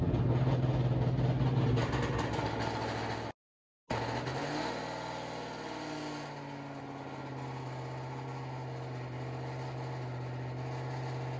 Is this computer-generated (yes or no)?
no